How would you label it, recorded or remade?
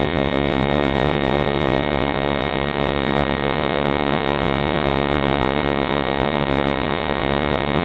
remade